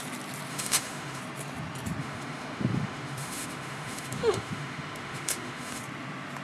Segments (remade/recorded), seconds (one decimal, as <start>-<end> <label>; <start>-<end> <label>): 0.0-0.5 recorded; 0.5-1.2 remade; 1.2-2.0 recorded; 2.0-5.8 remade; 5.8-6.4 recorded